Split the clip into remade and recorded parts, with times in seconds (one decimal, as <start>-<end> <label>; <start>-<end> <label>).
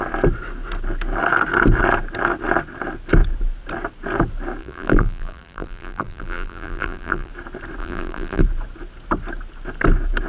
0.0-4.6 recorded; 4.6-7.3 remade; 7.3-7.8 recorded; 7.8-8.4 remade; 8.4-10.3 recorded